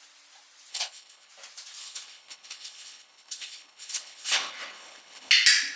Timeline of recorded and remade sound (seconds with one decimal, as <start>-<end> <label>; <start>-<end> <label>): 0.0-0.7 recorded; 0.7-1.3 remade; 1.3-1.8 recorded; 1.8-5.3 remade; 5.3-5.8 recorded